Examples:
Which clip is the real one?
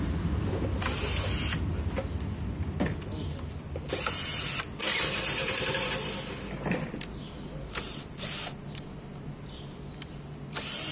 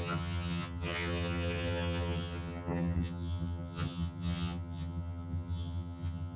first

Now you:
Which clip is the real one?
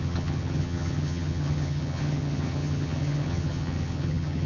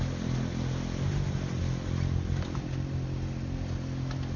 second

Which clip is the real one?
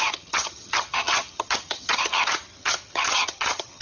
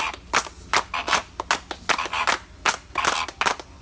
second